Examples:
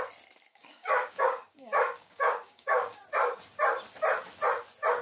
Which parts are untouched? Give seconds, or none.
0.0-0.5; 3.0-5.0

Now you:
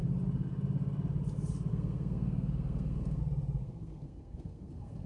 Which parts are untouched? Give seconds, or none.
0.0-1.7; 3.2-3.6

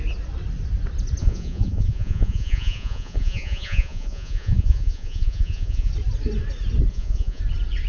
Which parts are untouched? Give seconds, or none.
0.0-1.2; 5.9-6.9; 7.4-7.9